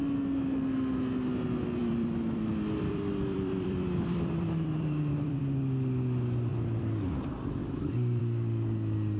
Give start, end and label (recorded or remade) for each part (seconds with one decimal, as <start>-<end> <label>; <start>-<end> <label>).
0.0-1.8 recorded; 1.8-5.4 remade; 5.4-6.5 recorded; 6.5-8.2 remade; 8.2-9.2 recorded